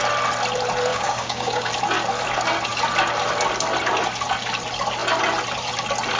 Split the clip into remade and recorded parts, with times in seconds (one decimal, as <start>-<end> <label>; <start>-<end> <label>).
0.0-0.9 recorded; 0.9-1.7 remade; 1.7-6.2 recorded